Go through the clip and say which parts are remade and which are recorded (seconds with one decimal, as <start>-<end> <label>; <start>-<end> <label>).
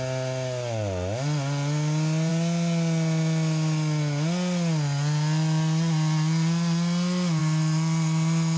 0.0-8.6 recorded